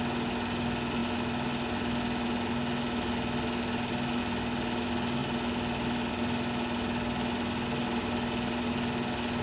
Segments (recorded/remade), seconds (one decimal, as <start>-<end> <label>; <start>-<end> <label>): 0.0-9.4 recorded